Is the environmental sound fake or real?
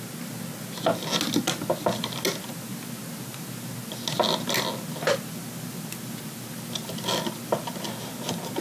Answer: real